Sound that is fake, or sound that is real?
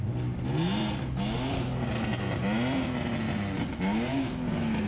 real